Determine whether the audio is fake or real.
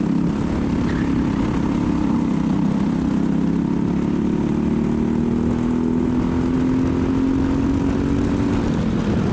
real